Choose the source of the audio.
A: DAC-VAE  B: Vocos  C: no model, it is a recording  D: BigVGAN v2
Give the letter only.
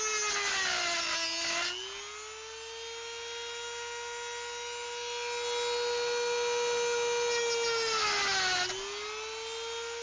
C